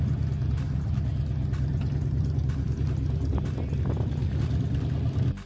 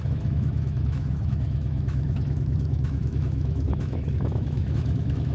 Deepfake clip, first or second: second